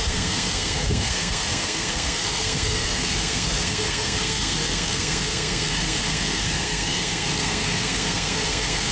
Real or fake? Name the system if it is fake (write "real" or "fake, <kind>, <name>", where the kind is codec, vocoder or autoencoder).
fake, codec, SNAC